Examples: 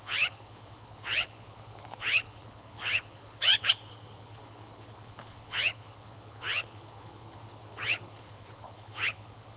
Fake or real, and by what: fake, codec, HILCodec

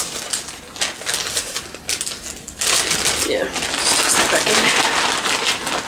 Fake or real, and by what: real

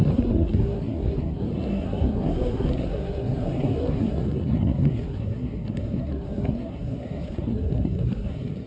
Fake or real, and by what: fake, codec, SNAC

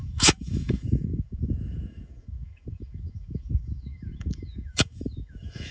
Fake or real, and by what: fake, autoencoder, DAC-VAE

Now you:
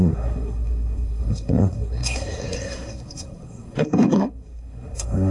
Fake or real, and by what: fake, codec, SNAC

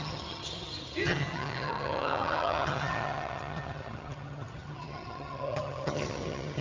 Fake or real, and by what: fake, vocoder, HiFi-GAN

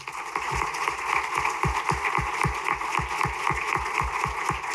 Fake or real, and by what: real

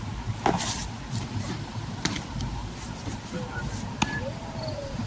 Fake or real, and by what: real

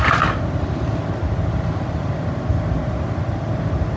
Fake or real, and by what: real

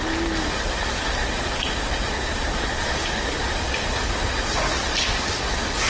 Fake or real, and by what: real